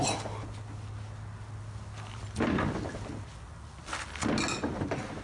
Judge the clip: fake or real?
real